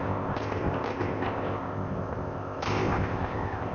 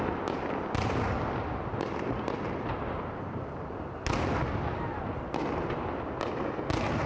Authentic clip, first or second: second